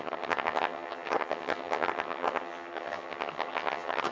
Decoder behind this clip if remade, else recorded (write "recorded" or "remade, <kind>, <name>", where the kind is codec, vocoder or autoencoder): remade, vocoder, HiFi-GAN